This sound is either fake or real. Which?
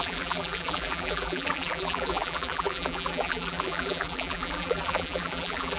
fake